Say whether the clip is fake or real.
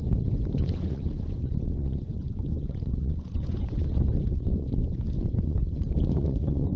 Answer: fake